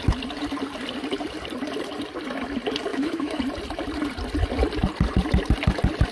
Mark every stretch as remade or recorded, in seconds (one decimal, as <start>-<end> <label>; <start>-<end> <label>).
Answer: 0.0-2.9 recorded; 2.9-3.4 remade; 3.4-6.1 recorded